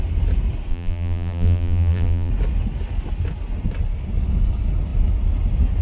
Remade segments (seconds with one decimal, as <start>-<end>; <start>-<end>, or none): 0.7-2.3